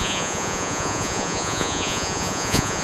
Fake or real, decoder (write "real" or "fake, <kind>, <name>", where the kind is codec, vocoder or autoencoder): fake, vocoder, Vocos